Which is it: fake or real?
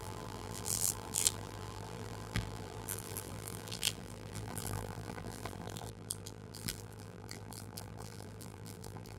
fake